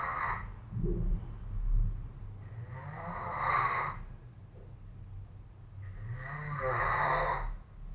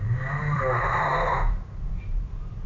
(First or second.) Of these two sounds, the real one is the first